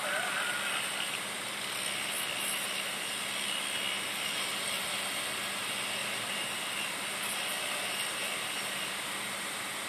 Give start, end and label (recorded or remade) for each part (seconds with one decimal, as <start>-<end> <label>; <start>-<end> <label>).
0.0-9.9 recorded